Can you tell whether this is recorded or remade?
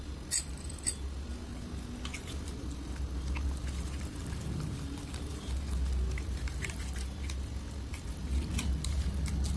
recorded